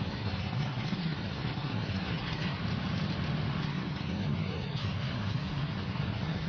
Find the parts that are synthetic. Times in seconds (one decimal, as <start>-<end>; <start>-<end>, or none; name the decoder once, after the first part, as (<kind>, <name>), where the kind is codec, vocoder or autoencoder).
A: 0.0-2.6 (codec, SNAC); 3.6-6.5